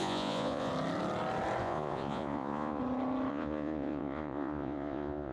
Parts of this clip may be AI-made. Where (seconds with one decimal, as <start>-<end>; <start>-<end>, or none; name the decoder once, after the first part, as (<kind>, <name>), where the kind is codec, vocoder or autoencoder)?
0.0-0.7 (vocoder, Vocos); 1.6-2.8; 3.3-5.3